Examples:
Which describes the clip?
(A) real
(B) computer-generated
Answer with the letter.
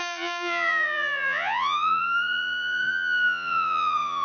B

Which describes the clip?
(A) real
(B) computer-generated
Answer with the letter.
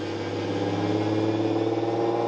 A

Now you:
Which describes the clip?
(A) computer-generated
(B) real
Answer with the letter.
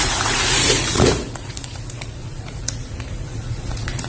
A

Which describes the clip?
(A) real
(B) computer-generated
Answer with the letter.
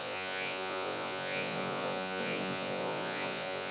B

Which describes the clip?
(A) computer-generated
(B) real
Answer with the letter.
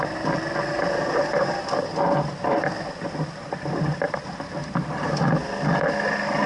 B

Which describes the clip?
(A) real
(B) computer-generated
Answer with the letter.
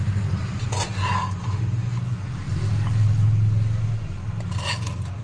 A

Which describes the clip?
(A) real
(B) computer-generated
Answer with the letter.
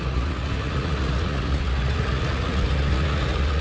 B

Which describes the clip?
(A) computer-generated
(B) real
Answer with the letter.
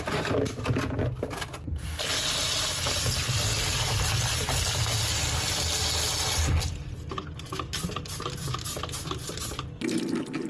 B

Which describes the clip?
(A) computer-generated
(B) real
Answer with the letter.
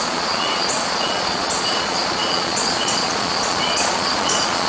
A